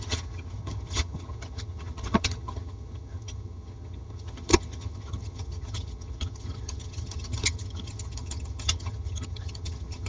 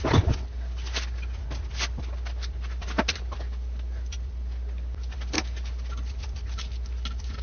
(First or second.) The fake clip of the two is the first